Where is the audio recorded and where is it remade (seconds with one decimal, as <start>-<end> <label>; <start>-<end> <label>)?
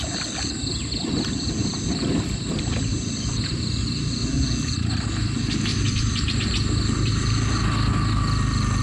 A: 0.0-1.6 recorded; 1.6-3.8 remade; 3.8-5.7 recorded; 5.7-7.1 remade; 7.1-8.8 recorded